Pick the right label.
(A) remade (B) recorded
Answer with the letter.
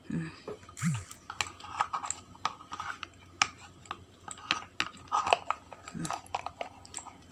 B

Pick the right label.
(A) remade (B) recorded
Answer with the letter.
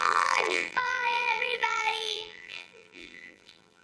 A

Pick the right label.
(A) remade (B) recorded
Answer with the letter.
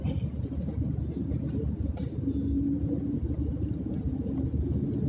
B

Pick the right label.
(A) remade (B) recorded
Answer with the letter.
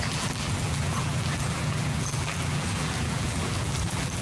A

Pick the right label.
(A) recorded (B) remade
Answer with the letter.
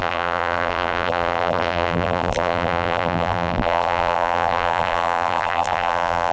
B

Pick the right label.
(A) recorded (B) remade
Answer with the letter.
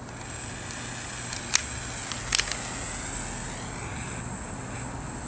A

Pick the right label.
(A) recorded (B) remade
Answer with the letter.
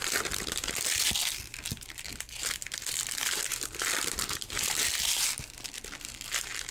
B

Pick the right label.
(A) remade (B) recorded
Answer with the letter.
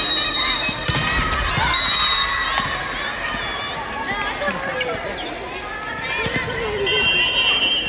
B